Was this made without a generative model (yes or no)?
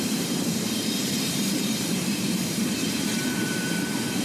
no